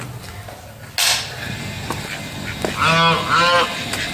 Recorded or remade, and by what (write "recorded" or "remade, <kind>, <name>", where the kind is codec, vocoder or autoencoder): recorded